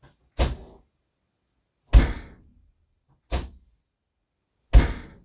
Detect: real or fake real